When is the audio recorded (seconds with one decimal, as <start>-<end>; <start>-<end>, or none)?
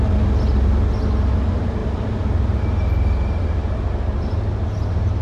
0.0-5.2